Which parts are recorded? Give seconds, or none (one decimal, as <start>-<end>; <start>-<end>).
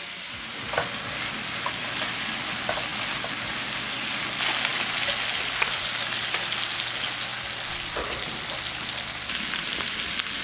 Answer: 0.0-10.4